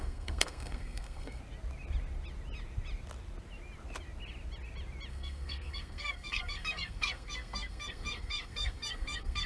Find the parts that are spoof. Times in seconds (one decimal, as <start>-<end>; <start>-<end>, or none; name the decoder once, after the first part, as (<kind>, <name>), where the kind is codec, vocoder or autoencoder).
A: 0.0-1.4 (codec, SNAC); 5.1-9.5